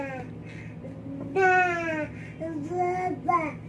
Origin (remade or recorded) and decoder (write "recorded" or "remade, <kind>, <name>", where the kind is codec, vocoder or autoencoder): recorded